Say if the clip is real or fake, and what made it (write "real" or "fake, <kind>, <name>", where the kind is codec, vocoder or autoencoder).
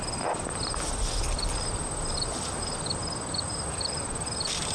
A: real